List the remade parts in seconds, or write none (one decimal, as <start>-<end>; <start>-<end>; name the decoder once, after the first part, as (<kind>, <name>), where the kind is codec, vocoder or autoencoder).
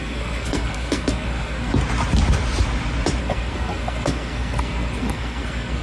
0.0-1.7 (codec, SNAC); 3.2-5.8